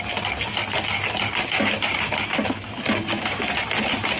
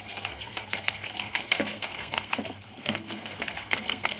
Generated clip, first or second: second